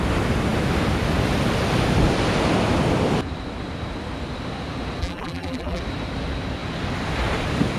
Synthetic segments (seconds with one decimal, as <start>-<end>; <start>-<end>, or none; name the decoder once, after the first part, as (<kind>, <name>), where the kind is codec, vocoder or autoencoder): 5.0-5.8 (vocoder, BigVGAN v2)